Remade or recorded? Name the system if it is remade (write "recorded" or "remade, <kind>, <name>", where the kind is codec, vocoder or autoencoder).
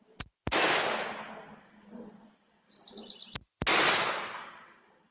recorded